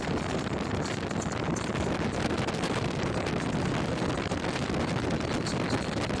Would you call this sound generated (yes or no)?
no